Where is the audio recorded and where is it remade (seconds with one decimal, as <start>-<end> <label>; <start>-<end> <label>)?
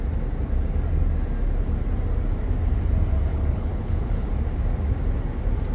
0.0-3.3 recorded; 3.3-4.3 remade; 4.3-5.7 recorded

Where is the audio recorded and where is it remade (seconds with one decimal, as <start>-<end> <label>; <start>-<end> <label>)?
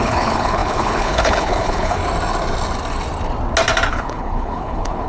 0.0-2.0 remade; 2.0-3.9 recorded; 3.9-5.1 remade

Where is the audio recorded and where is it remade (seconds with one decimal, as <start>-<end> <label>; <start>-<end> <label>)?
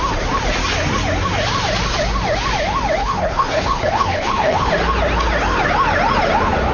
0.0-3.0 recorded; 3.0-4.7 remade; 4.7-6.7 recorded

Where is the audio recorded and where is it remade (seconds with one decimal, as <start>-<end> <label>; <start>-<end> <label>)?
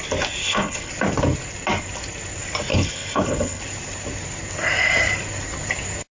0.0-0.4 recorded; 0.4-0.9 remade; 0.9-2.7 recorded; 2.7-3.6 remade; 3.6-6.2 recorded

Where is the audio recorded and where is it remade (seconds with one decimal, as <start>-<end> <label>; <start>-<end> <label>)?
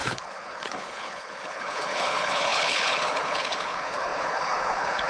0.0-5.1 remade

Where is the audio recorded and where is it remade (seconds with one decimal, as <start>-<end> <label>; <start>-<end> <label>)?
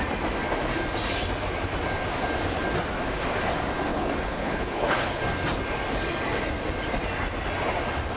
0.0-3.9 recorded; 3.9-5.2 remade; 5.2-8.2 recorded